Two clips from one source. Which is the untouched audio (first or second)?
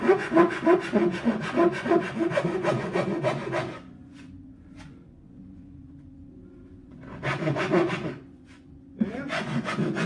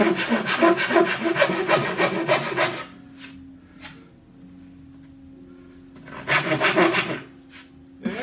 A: second